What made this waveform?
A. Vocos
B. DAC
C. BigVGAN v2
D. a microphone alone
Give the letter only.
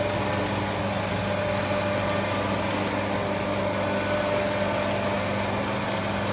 D